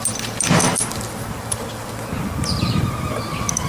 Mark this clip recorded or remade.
remade